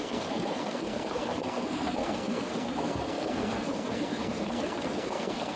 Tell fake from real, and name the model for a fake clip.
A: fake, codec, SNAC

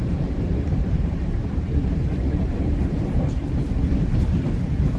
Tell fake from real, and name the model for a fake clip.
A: fake, vocoder, BigVGAN v2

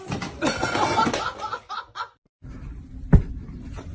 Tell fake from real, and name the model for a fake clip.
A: real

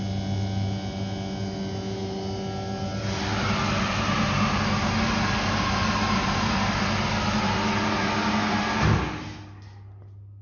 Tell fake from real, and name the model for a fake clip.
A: real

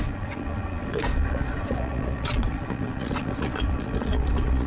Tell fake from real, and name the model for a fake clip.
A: fake, vocoder, Vocos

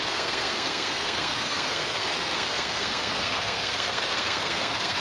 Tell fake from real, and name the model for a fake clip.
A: fake, codec, SNAC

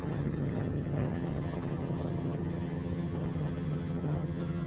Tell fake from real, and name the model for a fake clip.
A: fake, vocoder, HiFi-GAN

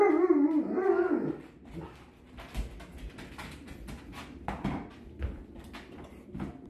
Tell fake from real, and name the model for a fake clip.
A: real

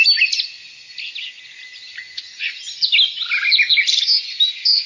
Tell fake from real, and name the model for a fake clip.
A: real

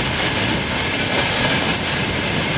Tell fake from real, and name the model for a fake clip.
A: real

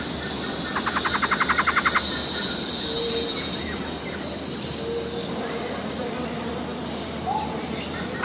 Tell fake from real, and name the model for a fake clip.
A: real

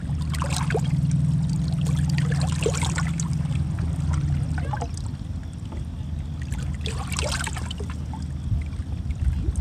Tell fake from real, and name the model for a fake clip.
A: real